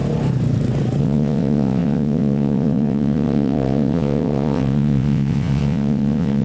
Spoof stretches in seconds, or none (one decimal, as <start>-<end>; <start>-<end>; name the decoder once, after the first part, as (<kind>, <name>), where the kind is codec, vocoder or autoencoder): 1.0-6.4 (vocoder, WaveNeXt)